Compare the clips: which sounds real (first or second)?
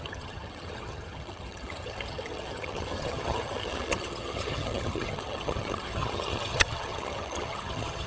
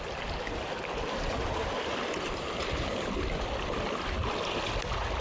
second